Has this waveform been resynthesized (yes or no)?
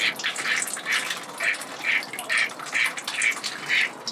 no